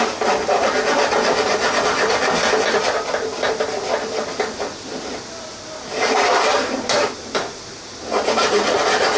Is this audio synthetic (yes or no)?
no